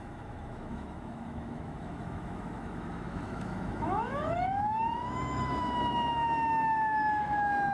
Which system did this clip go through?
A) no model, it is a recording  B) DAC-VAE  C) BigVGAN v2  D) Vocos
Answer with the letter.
B